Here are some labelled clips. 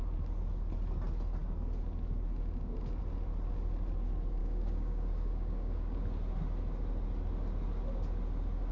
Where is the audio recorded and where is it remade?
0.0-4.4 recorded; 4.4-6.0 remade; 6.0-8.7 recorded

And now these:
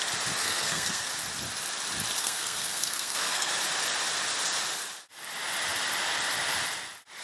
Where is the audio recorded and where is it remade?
0.0-0.4 recorded; 0.4-1.1 remade; 1.1-2.2 recorded; 2.2-3.5 remade; 3.5-7.2 recorded

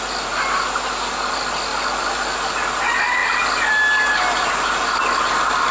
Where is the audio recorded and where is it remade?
0.0-5.7 recorded